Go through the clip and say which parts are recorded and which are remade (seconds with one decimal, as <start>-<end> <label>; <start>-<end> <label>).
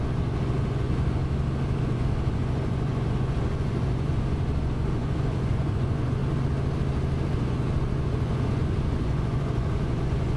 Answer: 0.0-1.2 remade; 1.2-1.8 recorded; 1.8-6.2 remade; 6.2-7.3 recorded; 7.3-10.4 remade